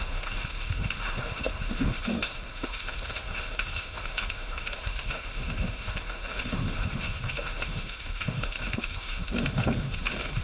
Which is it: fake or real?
fake